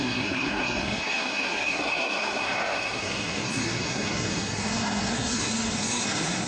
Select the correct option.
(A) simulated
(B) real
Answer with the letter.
A